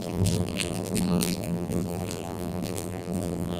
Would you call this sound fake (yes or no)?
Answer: yes